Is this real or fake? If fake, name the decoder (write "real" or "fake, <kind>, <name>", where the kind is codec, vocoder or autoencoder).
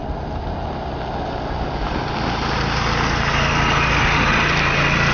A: real